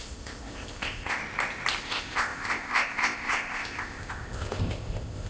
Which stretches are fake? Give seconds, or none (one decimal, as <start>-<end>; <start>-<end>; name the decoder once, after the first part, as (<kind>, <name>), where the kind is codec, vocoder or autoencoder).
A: 0.0-1.2 (codec, ZipCodec); 1.8-5.3